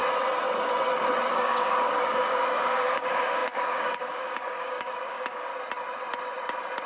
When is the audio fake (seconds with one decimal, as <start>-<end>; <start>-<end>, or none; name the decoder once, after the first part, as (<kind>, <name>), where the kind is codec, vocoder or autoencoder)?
1.3-5.5 (codec, DAC)